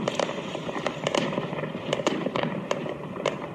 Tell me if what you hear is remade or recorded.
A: remade